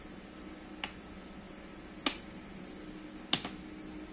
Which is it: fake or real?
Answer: real